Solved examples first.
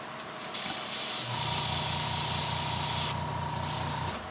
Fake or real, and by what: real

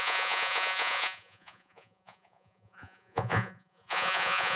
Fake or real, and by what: fake, vocoder, Vocos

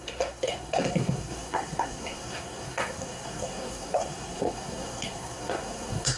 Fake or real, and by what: fake, codec, SNAC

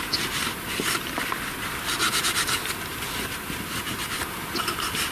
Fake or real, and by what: real